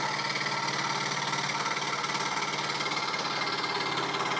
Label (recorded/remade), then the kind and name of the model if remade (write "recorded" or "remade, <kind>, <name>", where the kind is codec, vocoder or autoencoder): recorded